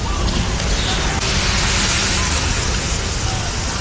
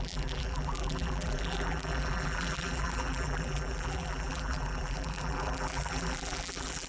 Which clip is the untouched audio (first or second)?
first